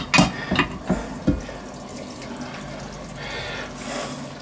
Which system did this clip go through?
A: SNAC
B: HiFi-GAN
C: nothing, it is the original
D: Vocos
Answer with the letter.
C